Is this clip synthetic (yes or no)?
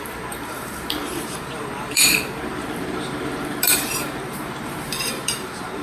yes